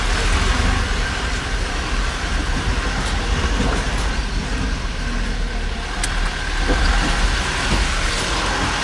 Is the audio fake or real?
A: real